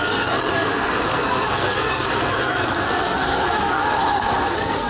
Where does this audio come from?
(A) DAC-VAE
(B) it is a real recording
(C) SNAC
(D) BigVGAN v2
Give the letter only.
C